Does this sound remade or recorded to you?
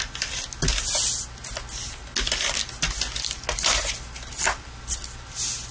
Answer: recorded